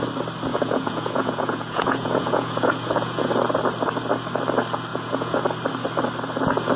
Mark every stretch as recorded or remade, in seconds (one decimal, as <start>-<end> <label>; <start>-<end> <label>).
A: 0.0-0.5 recorded; 0.5-3.3 remade; 3.3-4.9 recorded; 4.9-5.4 remade; 5.4-6.8 recorded